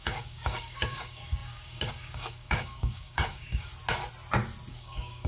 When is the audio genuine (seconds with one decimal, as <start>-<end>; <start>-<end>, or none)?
3.7-4.7